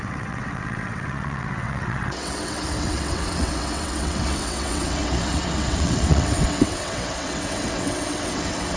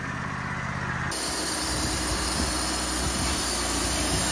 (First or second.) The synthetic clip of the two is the first